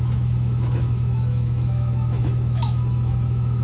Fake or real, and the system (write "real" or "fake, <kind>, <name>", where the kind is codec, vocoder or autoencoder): fake, autoencoder, DAC-VAE